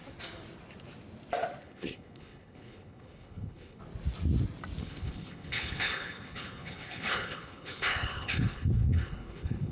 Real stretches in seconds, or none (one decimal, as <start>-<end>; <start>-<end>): 0.0-1.6; 3.8-4.8